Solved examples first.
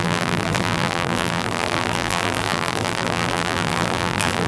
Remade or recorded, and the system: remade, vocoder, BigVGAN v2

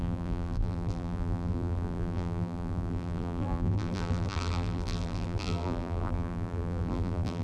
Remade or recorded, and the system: remade, vocoder, BigVGAN v2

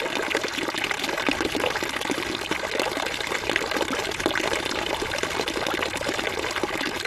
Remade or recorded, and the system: recorded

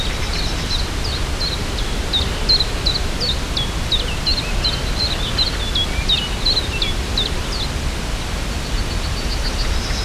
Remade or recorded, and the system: recorded